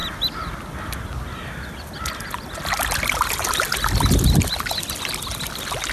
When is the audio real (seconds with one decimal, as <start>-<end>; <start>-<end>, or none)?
0.0-5.9